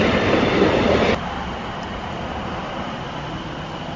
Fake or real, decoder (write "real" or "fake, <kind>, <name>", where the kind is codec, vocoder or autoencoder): real